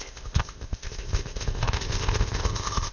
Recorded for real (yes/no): no